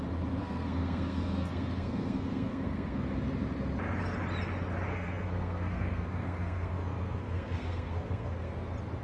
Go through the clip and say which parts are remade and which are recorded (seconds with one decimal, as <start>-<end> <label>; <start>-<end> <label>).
0.0-0.4 recorded; 0.4-3.0 remade; 3.0-4.9 recorded; 4.9-8.5 remade; 8.5-9.0 recorded